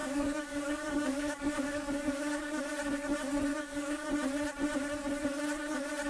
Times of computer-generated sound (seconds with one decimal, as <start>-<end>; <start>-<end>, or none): 0.0-2.6; 3.5-4.1

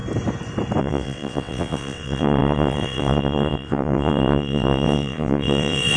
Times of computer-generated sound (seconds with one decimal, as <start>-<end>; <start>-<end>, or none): 0.8-6.0

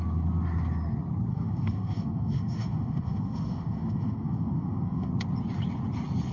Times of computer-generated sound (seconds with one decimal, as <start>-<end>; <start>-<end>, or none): 1.3-5.1